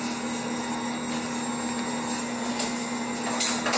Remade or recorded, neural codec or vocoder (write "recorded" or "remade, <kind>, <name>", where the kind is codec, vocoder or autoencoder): recorded